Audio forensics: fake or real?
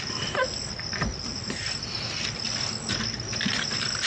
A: real